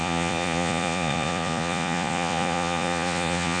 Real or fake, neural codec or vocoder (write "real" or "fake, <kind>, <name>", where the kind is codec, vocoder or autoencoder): fake, vocoder, Vocos